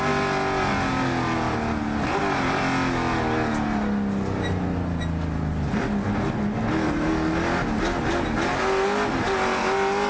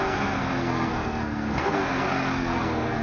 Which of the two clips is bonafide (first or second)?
first